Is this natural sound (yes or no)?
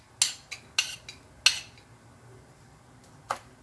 yes